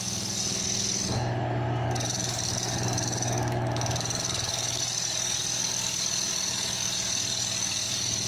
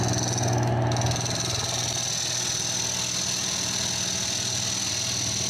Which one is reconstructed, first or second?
first